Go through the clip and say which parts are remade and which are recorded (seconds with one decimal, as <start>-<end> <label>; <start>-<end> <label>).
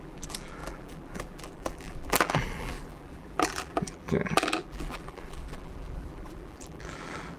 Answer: 0.0-7.4 remade